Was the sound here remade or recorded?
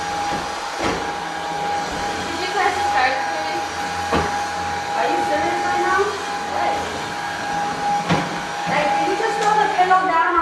recorded